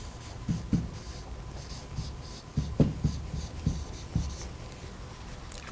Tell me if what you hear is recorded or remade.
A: recorded